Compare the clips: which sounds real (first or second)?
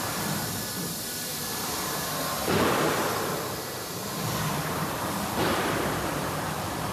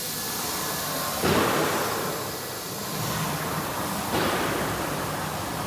second